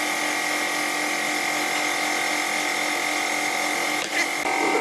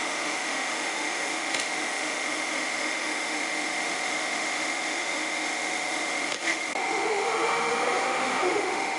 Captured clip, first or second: first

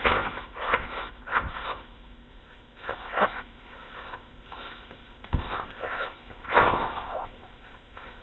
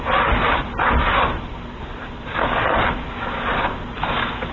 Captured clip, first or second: second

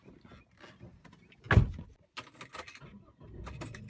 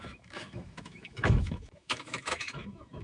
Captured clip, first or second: first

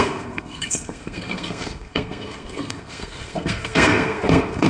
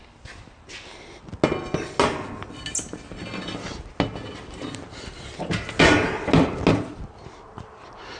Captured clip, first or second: second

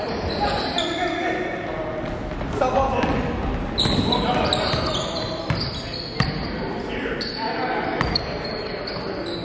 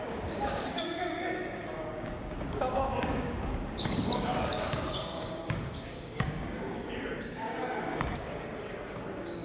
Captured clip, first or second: first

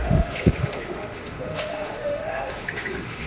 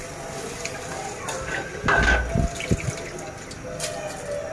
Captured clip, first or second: second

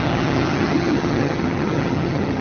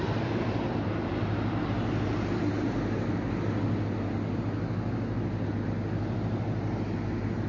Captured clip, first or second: second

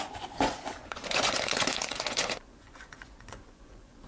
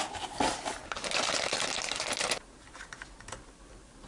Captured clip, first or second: second